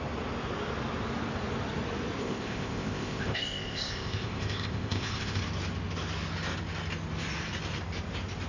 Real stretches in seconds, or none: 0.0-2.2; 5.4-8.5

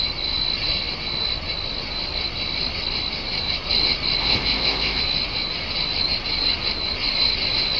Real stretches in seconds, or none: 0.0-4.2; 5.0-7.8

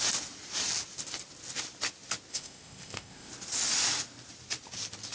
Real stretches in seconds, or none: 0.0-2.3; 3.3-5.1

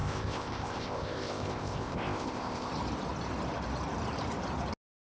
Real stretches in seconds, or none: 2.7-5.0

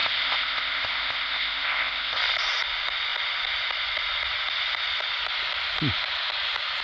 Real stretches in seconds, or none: 2.2-6.8

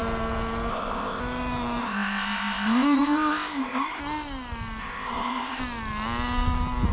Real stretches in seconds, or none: 0.0-0.7; 1.2-1.8; 4.0-4.8; 5.6-6.9